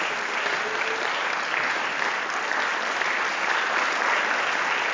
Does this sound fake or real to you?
real